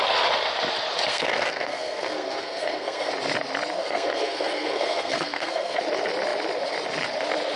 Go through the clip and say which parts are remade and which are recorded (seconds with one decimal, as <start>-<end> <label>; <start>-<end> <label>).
0.0-1.1 recorded; 1.1-3.1 remade; 3.1-3.8 recorded; 3.8-5.8 remade; 5.8-7.6 recorded